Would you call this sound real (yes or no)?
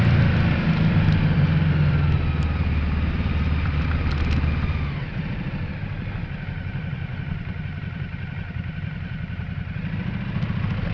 yes